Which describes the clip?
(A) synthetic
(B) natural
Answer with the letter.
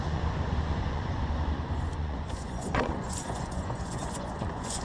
A